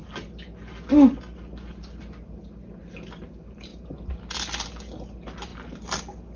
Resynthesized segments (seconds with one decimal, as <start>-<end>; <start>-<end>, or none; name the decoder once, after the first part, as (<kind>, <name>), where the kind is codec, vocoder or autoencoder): none